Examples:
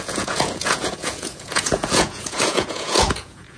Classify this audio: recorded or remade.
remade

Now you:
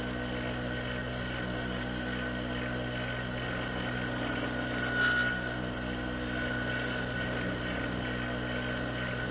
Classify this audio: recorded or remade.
recorded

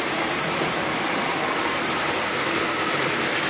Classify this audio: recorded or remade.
recorded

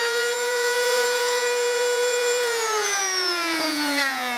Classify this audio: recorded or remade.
remade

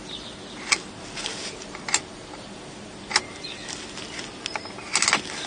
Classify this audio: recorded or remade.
recorded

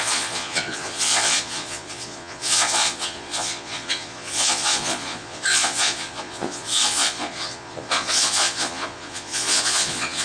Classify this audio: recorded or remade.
remade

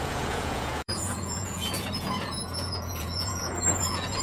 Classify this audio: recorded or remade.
remade